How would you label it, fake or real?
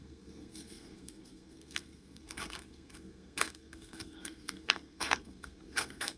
fake